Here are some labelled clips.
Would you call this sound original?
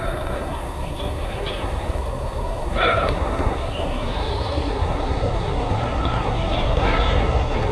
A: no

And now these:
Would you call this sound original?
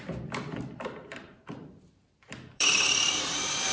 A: no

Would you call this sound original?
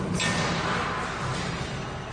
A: no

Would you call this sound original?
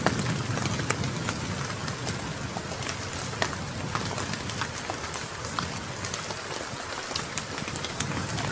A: yes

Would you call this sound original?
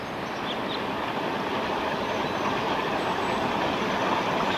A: yes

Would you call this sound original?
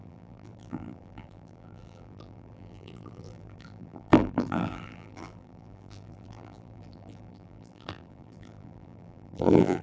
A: no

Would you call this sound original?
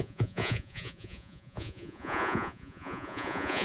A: no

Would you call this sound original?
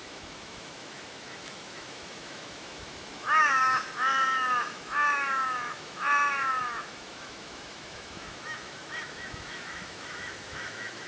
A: no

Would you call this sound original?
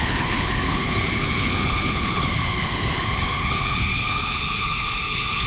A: no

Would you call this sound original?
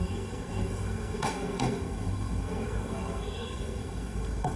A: no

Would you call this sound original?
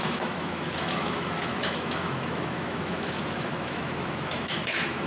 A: no